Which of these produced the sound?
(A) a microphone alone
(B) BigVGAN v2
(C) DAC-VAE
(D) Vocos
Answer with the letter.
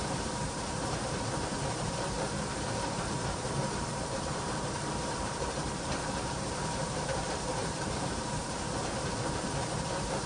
B